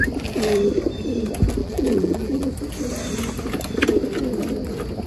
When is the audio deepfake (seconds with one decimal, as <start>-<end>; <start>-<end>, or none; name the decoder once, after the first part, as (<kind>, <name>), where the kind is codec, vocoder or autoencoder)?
1.6-2.5 (vocoder, BigVGAN v2)